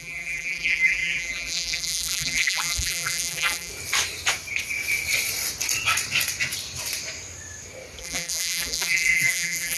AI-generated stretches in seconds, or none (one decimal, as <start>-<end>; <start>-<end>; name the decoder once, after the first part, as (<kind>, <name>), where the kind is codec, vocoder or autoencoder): 0.0-3.7 (vocoder, BigVGAN v2); 8.0-9.8